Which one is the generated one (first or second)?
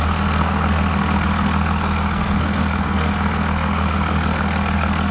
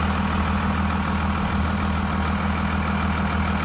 first